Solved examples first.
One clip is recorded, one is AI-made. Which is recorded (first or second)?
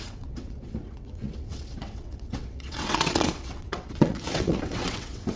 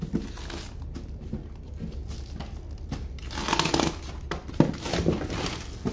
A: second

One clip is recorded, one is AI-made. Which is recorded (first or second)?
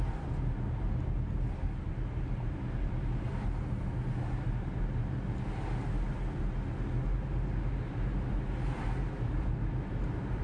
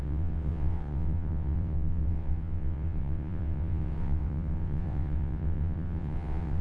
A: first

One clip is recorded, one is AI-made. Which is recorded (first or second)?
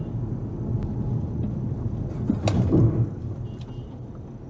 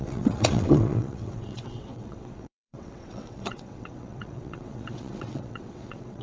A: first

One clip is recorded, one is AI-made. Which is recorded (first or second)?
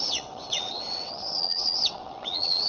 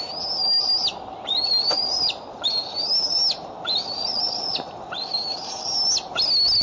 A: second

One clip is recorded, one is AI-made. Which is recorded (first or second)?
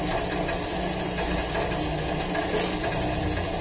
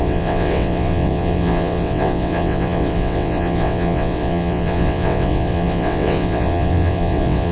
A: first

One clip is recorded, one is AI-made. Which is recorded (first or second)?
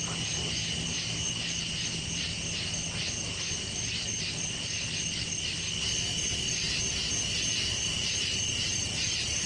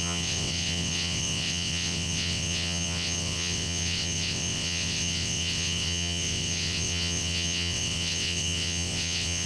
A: first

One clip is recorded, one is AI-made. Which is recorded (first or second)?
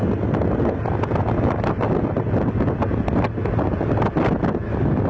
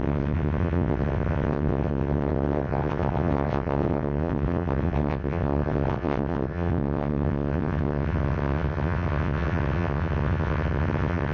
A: first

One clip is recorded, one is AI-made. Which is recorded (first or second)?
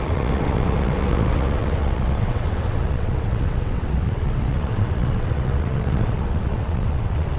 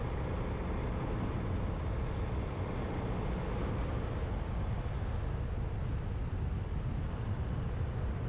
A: second